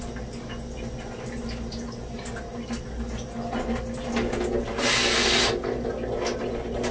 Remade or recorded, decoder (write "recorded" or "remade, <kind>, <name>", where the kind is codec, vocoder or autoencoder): recorded